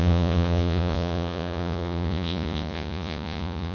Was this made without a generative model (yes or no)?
no